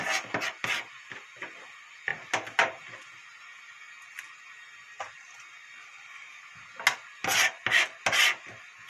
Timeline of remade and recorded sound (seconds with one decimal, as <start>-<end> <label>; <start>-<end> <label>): 0.0-8.9 recorded